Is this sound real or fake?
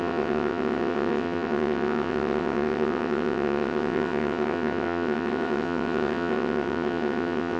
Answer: fake